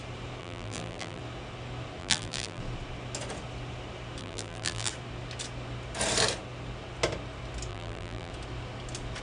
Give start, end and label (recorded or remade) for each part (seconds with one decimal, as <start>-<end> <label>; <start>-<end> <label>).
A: 0.0-0.4 recorded; 0.4-1.2 remade; 1.2-2.0 recorded; 2.0-2.6 remade; 2.6-4.2 recorded; 4.2-4.9 remade; 4.9-7.7 recorded; 7.7-8.3 remade; 8.3-9.2 recorded